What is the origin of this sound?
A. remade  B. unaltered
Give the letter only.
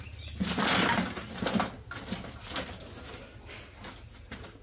B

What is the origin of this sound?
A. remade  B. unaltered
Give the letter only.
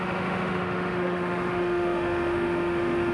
A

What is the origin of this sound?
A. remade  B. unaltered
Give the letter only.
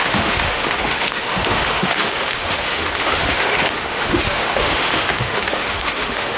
A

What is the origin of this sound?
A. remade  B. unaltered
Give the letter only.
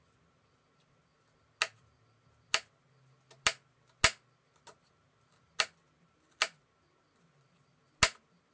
B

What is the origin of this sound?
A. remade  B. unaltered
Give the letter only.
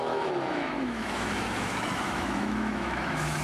A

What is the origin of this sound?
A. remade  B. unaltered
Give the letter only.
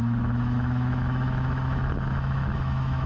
A